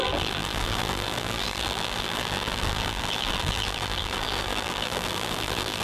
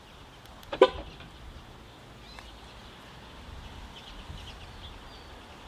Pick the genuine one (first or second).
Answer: second